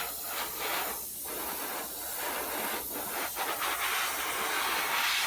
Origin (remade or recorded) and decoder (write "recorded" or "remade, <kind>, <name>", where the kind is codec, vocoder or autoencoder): recorded